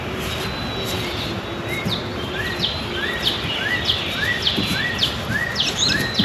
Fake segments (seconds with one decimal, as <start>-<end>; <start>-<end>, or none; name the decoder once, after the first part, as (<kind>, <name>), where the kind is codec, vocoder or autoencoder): 2.1-4.8 (vocoder, BigVGAN v2); 5.5-6.2